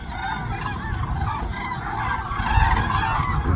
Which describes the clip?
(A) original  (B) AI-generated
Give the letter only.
A